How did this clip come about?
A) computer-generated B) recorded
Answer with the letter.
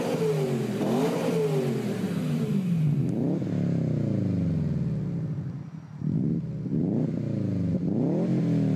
B